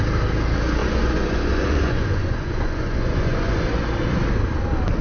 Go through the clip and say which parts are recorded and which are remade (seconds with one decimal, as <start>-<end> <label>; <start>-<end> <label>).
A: 0.0-0.8 recorded; 0.8-3.6 remade; 3.6-5.0 recorded